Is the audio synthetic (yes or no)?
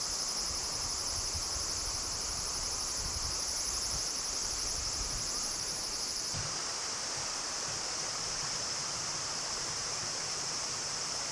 yes